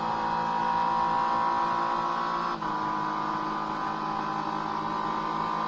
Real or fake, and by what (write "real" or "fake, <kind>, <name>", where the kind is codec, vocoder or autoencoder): real